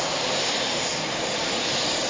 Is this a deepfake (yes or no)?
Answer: yes